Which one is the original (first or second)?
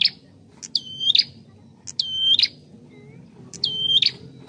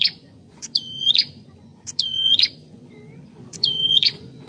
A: first